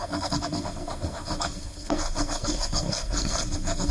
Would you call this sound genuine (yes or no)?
no